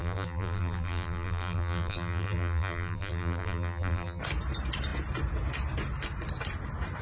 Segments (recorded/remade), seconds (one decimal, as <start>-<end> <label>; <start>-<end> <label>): 0.0-4.2 remade; 4.2-7.0 recorded